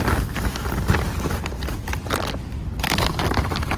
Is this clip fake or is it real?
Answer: real